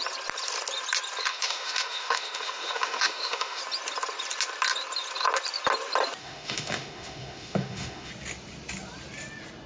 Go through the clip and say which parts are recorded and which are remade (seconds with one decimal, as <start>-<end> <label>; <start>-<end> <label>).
0.0-1.3 recorded; 1.3-3.6 remade; 3.6-6.2 recorded; 6.2-8.1 remade; 8.1-9.7 recorded

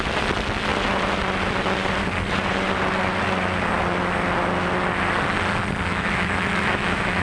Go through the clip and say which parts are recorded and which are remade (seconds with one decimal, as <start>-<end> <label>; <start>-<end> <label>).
0.0-5.9 recorded; 5.9-7.2 remade

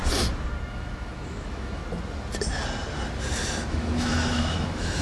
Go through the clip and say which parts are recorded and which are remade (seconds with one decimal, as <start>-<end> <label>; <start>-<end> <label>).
0.0-0.7 recorded; 0.7-1.8 remade; 1.8-3.7 recorded; 3.7-5.0 remade

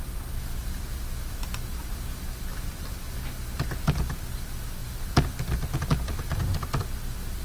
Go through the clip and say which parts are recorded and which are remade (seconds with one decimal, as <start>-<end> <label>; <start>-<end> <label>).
0.0-7.4 recorded

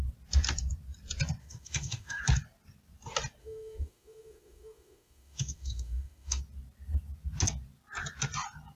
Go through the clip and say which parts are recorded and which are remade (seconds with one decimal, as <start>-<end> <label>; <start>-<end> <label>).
0.0-1.4 recorded; 1.4-2.2 remade; 2.2-3.4 recorded; 3.4-6.4 remade; 6.4-8.8 recorded

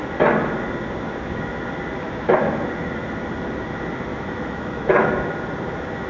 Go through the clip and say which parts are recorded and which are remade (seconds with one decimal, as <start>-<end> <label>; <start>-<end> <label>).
0.0-4.1 recorded; 4.1-5.1 remade; 5.1-6.1 recorded